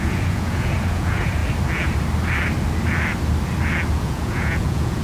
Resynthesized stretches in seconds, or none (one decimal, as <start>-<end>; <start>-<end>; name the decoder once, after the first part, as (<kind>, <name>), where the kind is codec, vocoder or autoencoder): 0.0-1.4 (vocoder, Vocos); 3.9-5.0